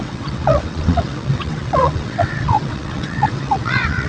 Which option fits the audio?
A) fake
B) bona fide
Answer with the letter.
A